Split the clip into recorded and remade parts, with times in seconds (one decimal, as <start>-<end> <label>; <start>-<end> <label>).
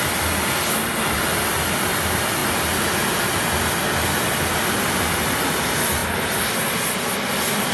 0.0-7.7 recorded